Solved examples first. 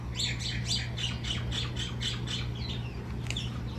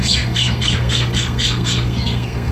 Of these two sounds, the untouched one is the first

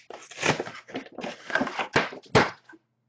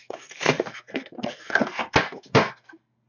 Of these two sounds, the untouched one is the first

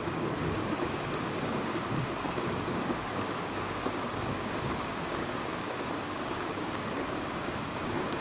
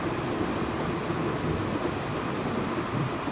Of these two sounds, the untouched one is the second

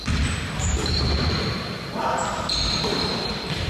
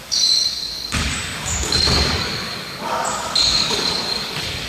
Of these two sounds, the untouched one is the first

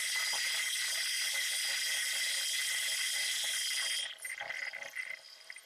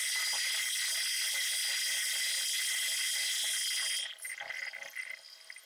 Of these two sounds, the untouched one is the second